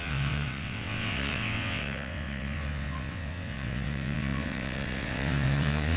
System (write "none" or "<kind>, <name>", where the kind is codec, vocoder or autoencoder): vocoder, WaveNeXt